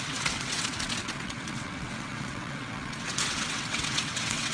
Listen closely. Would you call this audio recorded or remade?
remade